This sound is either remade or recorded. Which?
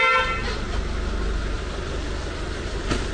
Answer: recorded